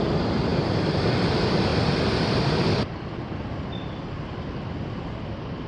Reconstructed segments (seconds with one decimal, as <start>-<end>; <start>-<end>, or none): 0.5-1.1